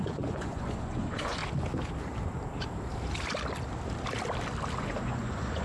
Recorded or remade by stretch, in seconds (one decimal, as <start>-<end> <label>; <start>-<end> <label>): 0.0-1.4 remade; 1.4-4.8 recorded; 4.8-5.6 remade